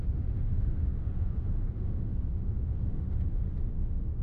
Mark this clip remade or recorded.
remade